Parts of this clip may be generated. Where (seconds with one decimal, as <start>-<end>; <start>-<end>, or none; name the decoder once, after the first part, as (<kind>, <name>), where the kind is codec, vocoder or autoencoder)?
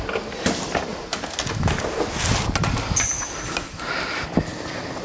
none